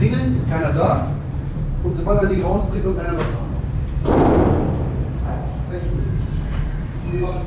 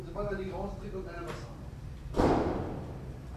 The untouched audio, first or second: second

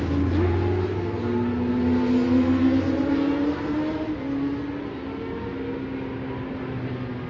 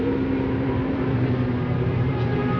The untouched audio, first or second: first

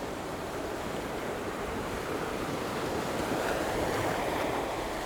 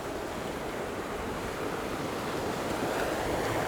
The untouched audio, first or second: second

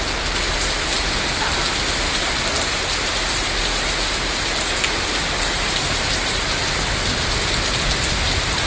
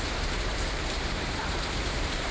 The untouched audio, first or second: first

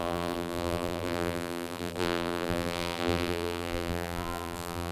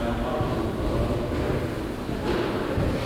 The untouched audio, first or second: second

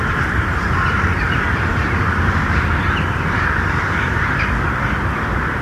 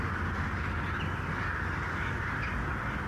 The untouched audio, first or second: second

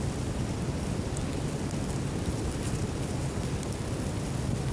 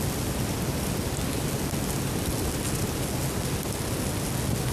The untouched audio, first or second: second